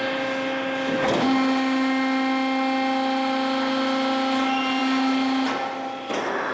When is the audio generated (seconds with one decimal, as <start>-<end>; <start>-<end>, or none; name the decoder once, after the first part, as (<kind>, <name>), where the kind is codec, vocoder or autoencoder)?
none